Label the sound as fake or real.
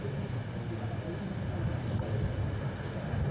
real